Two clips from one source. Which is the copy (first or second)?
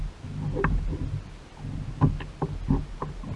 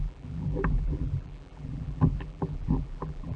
second